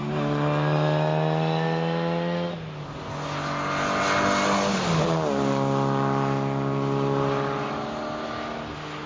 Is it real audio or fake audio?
real